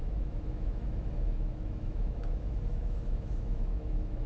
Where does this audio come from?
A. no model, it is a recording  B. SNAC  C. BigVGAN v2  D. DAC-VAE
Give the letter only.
D